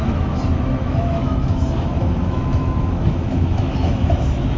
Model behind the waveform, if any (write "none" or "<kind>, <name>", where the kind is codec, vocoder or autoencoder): autoencoder, DAC-VAE